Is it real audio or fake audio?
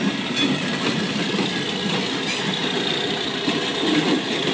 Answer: real